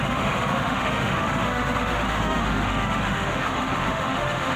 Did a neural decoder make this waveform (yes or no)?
yes